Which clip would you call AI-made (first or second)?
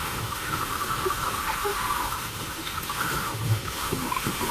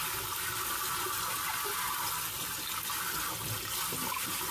first